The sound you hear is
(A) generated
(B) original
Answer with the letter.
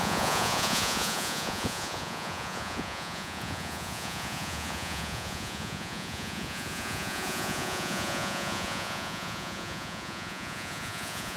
A